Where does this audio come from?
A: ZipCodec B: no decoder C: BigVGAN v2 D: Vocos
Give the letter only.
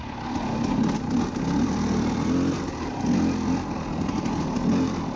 B